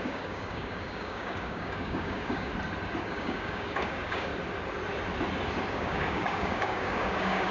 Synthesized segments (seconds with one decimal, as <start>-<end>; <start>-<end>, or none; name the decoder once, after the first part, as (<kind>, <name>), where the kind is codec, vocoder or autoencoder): 0.0-2.5 (codec, DAC); 3.0-4.3; 5.7-7.5